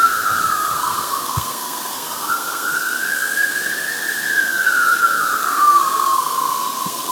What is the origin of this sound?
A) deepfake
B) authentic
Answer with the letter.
A